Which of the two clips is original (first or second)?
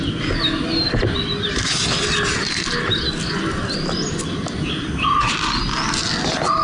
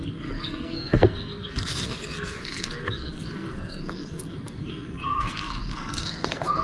first